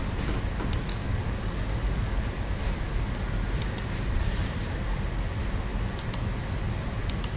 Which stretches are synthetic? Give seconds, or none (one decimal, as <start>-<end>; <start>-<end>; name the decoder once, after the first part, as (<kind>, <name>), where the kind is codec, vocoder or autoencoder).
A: 0.9-2.3 (codec, DAC)

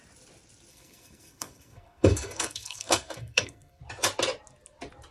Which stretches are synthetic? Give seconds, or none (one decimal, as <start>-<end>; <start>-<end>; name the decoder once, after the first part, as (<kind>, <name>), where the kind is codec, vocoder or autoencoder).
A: 0.7-3.8 (codec, SNAC)

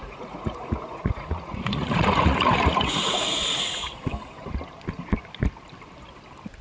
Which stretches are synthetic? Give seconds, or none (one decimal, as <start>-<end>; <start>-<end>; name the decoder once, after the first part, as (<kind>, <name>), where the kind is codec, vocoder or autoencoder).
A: 0.0-4.0 (vocoder, Vocos)

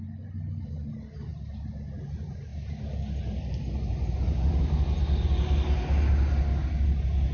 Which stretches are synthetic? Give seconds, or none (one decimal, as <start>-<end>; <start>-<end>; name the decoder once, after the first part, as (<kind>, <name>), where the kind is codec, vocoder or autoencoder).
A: none

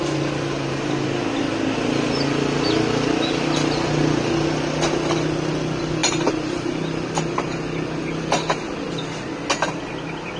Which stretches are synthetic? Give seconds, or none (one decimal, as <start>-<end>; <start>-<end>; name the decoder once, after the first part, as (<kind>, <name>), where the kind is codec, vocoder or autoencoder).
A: none

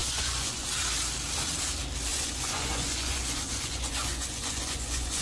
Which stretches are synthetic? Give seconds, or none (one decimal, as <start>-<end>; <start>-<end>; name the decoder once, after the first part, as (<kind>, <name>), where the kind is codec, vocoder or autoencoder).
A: 0.0-0.7 (vocoder, Vocos); 2.1-5.2

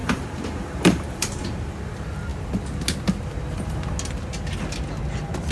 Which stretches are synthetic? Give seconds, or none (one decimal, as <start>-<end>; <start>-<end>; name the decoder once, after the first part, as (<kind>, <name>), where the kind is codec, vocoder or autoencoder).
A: 0.0-1.8 (vocoder, BigVGAN v2)